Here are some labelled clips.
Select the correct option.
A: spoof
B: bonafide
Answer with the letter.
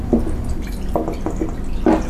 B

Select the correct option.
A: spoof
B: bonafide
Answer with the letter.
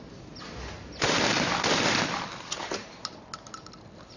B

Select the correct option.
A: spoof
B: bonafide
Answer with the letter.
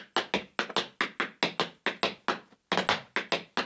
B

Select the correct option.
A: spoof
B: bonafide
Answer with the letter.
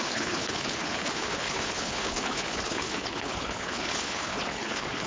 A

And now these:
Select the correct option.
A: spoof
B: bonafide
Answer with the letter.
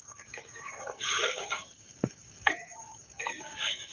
A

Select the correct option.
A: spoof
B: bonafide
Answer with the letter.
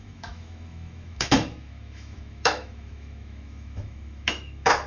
A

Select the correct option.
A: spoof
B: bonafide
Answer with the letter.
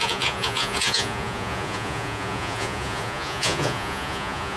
A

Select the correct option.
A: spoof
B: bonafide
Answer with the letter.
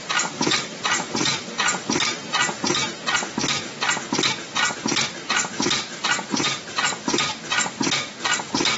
B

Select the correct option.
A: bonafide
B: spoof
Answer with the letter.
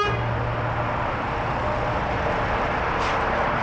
A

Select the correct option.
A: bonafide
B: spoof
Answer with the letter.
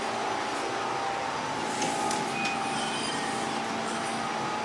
A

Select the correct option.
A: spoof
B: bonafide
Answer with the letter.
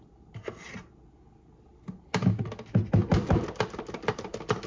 B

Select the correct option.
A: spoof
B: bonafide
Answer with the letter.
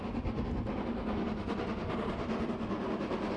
B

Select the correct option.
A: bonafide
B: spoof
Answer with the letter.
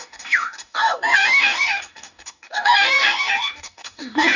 B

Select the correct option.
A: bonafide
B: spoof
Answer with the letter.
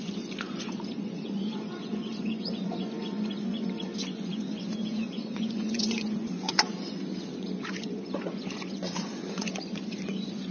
B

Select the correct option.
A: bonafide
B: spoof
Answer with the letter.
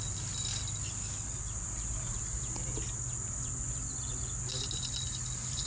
A